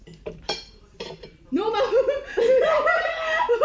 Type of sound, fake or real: fake